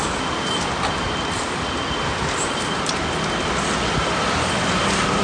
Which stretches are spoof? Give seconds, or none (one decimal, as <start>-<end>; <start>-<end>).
none